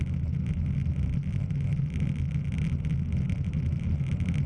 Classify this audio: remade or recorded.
recorded